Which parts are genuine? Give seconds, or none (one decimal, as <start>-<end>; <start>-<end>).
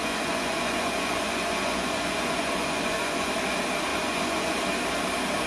3.3-3.9; 4.6-5.5